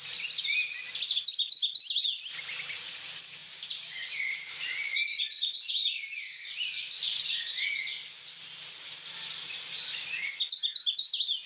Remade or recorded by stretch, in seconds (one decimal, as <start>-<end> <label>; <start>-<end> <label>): 0.0-3.4 recorded; 3.4-7.2 remade; 7.2-11.5 recorded

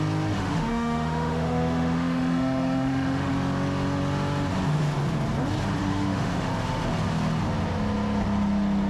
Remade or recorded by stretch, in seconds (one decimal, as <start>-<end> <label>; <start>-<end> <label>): 0.0-0.4 recorded; 0.4-3.3 remade; 3.3-5.8 recorded; 5.8-6.5 remade; 6.5-8.9 recorded